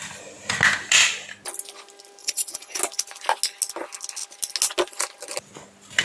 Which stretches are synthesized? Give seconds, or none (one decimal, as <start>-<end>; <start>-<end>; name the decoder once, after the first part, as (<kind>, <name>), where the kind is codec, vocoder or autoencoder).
2.2-2.8 (vocoder, WaveNeXt)